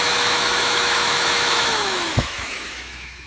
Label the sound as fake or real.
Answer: fake